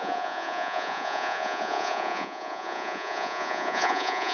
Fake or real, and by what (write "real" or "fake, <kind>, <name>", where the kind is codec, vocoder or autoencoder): fake, vocoder, Vocos